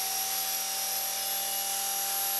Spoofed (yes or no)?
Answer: no